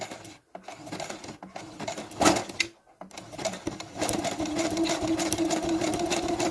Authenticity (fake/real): real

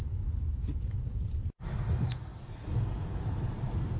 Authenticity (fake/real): real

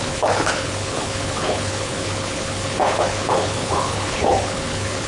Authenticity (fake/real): fake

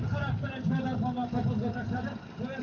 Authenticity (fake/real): real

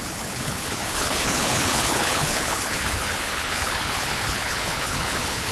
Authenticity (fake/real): fake